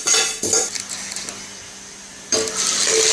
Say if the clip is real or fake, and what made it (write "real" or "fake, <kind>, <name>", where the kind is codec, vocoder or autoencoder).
real